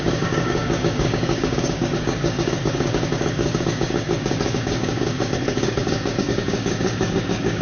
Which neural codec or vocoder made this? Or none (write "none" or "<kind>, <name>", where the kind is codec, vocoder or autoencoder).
codec, DAC